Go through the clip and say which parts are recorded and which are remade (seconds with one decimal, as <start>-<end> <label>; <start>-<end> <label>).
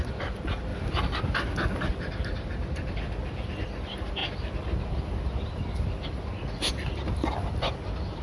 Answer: 0.0-8.2 recorded